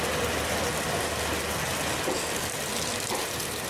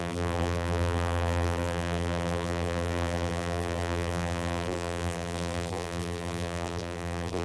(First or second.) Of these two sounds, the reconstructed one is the second